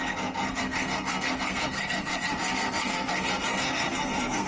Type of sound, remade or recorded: remade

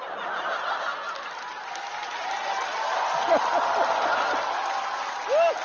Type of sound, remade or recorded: recorded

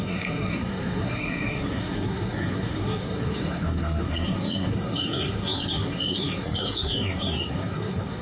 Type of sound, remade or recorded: remade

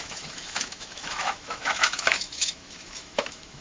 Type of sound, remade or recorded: remade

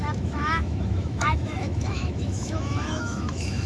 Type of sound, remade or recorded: remade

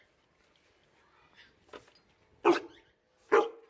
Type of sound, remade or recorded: recorded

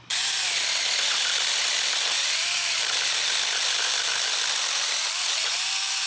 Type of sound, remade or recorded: remade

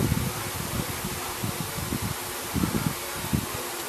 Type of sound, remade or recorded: recorded